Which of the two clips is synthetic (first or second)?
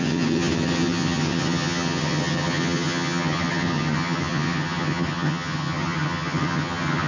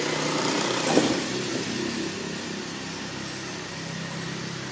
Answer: first